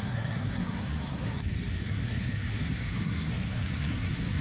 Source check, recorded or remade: remade